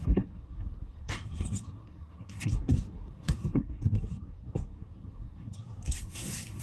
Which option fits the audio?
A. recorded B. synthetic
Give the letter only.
B